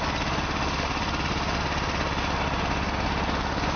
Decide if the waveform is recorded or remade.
recorded